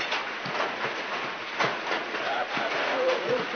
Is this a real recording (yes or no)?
no